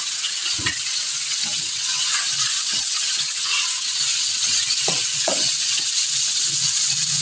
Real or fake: fake